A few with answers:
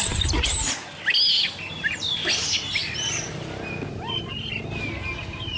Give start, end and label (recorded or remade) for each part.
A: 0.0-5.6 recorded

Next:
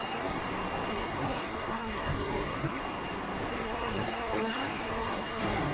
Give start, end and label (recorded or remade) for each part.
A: 0.0-0.4 remade; 0.4-0.9 recorded; 0.9-2.8 remade; 2.8-3.5 recorded; 3.5-5.7 remade

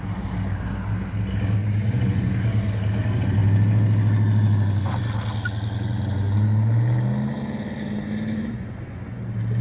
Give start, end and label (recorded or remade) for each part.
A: 0.0-1.6 recorded; 1.6-2.3 remade; 2.3-8.3 recorded; 8.3-9.2 remade; 9.2-9.6 recorded

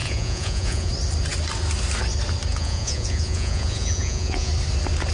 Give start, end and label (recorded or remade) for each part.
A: 0.0-0.9 remade; 0.9-2.5 recorded; 2.5-4.5 remade; 4.5-5.1 recorded

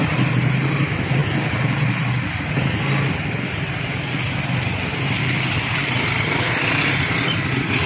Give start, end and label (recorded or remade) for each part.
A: 0.0-7.9 recorded